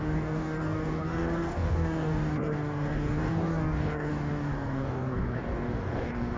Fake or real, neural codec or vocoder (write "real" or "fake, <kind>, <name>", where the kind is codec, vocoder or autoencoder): fake, codec, DAC